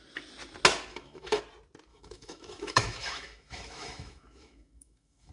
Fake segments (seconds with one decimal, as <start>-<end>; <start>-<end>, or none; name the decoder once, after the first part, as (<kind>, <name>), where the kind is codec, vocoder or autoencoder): 0.9-1.4 (autoencoder, DAC-VAE); 1.9-5.3